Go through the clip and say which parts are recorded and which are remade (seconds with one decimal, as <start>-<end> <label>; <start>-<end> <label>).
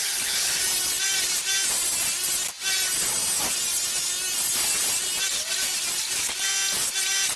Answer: 0.0-0.6 remade; 0.6-7.4 recorded